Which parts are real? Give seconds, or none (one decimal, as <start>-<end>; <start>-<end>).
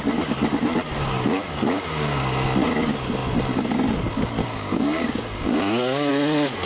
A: 0.0-1.0; 2.2-4.4; 6.1-6.7